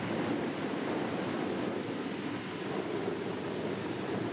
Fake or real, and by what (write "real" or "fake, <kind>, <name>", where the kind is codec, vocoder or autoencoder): real